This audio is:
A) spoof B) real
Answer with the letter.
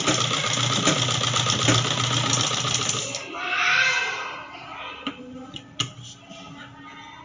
B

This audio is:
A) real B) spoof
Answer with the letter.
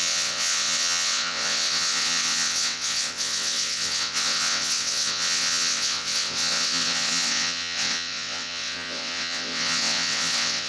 B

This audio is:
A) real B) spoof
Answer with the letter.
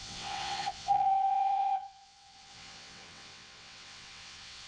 B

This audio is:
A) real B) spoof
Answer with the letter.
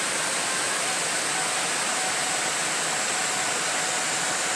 A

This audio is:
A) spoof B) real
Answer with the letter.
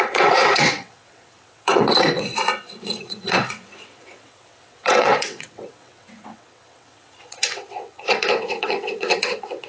A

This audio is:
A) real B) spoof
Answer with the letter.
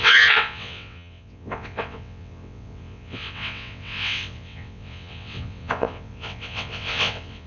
B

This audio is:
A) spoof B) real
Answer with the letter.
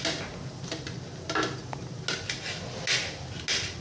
B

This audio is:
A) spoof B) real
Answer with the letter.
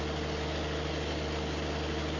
B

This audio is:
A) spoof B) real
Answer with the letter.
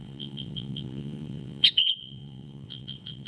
A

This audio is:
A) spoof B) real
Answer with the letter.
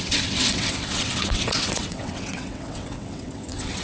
A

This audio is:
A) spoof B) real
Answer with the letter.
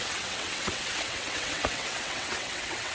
A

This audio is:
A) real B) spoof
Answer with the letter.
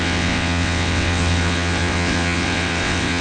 B